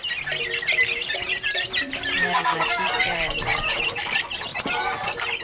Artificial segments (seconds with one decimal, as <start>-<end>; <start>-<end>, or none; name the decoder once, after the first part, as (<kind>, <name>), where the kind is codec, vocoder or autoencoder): 1.0-4.1 (vocoder, BigVGAN v2); 4.5-5.4